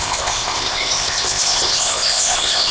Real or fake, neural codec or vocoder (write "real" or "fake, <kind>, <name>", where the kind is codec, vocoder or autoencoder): fake, codec, ZipCodec